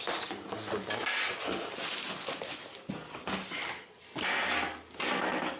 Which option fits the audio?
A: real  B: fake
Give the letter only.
A